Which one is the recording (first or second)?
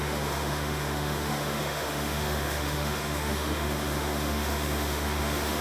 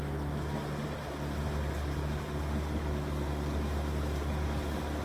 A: second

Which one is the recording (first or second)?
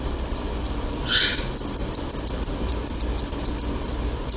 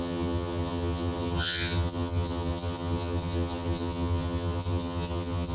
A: first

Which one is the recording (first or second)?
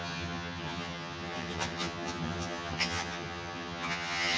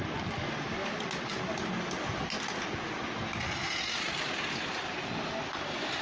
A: second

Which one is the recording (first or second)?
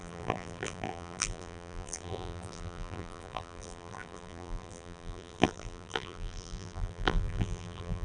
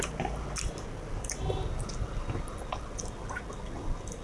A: second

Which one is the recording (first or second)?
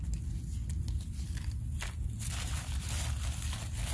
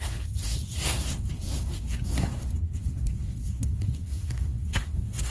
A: first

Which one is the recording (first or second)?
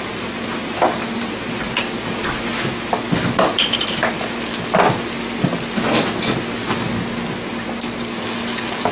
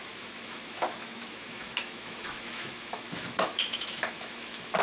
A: first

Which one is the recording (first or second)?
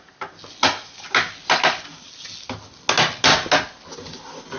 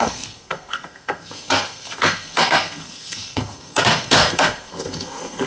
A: first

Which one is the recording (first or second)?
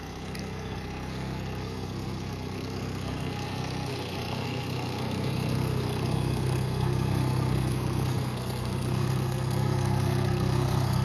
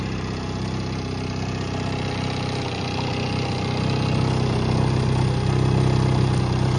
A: second